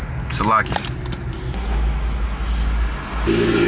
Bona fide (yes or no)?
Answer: yes